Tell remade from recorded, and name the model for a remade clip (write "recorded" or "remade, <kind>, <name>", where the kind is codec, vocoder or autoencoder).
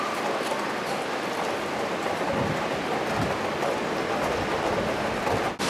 recorded